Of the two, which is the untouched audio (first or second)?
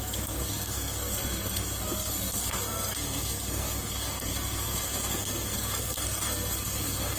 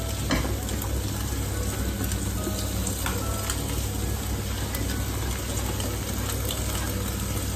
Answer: second